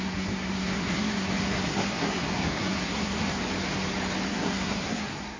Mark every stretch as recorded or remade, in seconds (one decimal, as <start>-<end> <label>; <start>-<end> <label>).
0.0-3.4 remade; 3.4-4.3 recorded; 4.3-5.4 remade

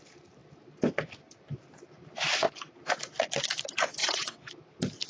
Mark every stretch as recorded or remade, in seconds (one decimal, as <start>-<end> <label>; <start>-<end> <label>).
0.0-4.0 recorded; 4.0-4.5 remade; 4.5-5.1 recorded

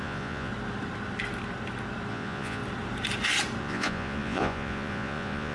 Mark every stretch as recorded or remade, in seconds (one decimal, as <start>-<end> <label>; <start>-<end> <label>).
0.0-0.5 remade; 0.5-2.1 recorded; 2.1-2.6 remade; 2.6-3.6 recorded; 3.6-5.5 remade

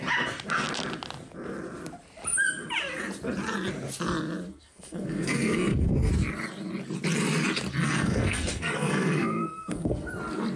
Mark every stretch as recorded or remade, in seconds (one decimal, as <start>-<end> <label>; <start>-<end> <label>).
0.0-4.5 recorded; 4.5-6.1 remade; 6.1-7.8 recorded; 7.8-10.1 remade; 10.1-10.6 recorded